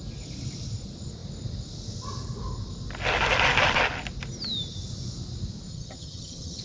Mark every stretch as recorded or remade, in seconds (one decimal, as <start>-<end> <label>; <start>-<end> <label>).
0.0-5.7 recorded; 5.7-6.6 remade